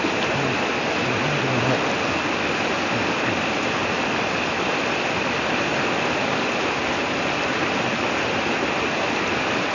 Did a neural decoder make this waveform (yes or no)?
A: no